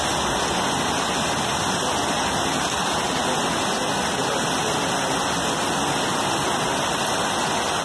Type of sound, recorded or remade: recorded